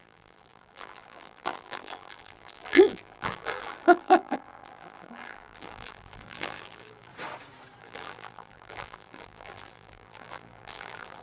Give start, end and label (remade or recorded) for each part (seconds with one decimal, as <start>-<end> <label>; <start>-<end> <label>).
0.0-7.1 remade; 7.1-7.8 recorded; 7.8-11.2 remade